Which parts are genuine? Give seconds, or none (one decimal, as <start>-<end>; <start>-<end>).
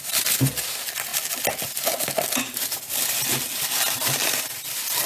0.0-5.1